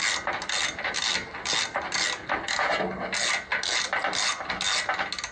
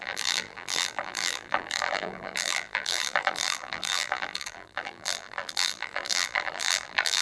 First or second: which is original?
first